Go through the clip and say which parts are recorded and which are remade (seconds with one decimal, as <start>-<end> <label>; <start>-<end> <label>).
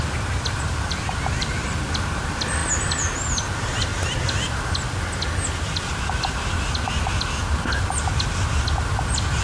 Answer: 0.0-2.6 remade; 2.6-3.5 recorded; 3.5-3.9 remade; 3.9-9.4 recorded